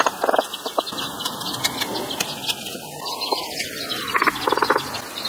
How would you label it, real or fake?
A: real